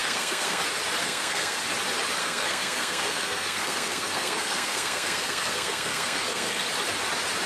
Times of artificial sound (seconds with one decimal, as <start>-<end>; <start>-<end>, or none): 0.0-0.6; 1.0-1.6; 2.2-6.7